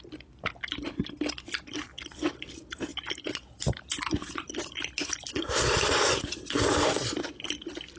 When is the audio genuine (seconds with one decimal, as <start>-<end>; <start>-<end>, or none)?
0.0-8.0